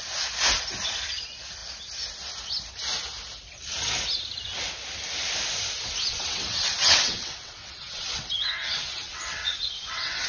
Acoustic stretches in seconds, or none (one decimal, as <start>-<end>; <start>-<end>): 0.0-6.1